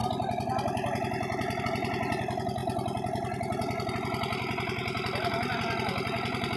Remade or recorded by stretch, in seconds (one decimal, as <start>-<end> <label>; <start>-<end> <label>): 0.0-6.6 recorded

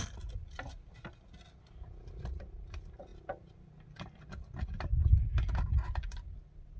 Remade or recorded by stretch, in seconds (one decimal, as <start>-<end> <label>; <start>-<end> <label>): 0.0-6.8 recorded

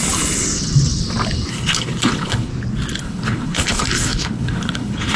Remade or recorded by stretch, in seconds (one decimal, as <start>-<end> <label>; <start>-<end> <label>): 0.0-1.5 recorded; 1.5-2.5 remade; 2.5-3.0 recorded; 3.0-5.2 remade

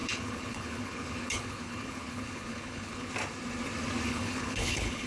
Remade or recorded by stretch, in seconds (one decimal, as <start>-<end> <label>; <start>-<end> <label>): 0.0-3.1 remade; 3.1-4.1 recorded; 4.1-5.1 remade

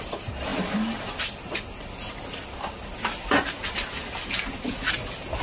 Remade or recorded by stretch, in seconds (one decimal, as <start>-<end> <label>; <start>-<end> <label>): 0.0-5.4 recorded

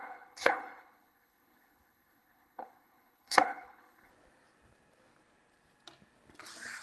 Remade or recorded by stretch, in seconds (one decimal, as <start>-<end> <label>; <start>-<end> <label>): 0.0-4.1 remade; 4.1-6.8 recorded